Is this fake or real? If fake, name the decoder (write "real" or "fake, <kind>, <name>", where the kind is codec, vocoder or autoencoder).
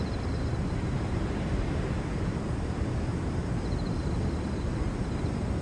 fake, vocoder, BigVGAN v2